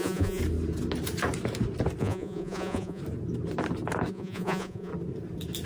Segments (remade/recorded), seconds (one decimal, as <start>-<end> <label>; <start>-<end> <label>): 0.0-0.4 remade; 0.4-2.0 recorded; 2.0-3.0 remade; 3.0-4.1 recorded; 4.1-4.9 remade; 4.9-5.7 recorded